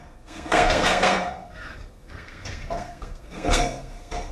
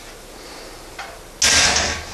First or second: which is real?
second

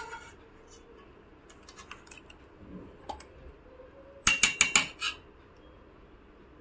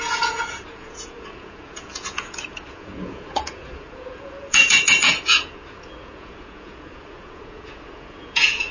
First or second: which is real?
first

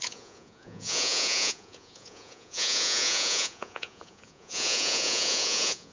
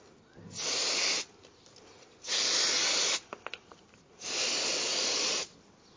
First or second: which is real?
second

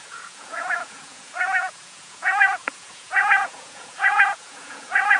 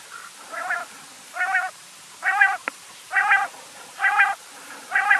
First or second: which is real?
second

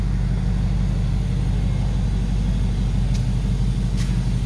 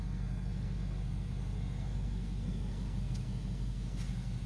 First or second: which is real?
first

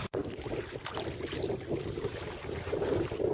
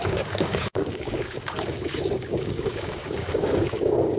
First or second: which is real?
first